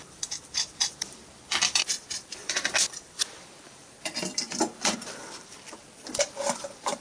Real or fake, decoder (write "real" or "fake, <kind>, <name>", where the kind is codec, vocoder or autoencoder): fake, vocoder, BigVGAN v2